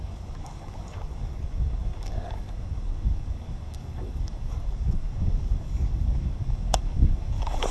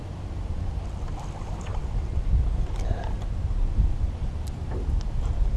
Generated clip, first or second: first